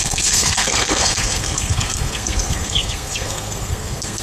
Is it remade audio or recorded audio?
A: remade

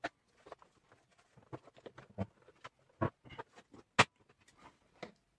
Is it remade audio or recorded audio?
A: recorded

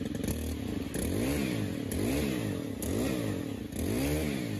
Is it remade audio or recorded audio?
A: recorded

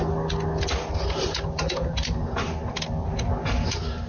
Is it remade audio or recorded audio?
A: recorded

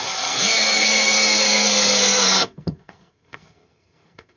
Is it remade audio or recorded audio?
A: remade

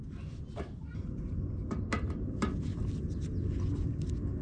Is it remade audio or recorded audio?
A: recorded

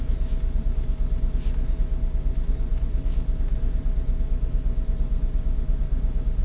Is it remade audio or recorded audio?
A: recorded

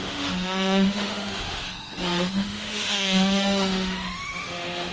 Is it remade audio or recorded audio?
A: remade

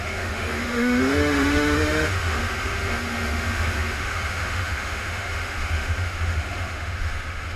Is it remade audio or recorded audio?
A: remade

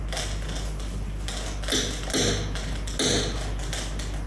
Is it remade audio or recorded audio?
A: recorded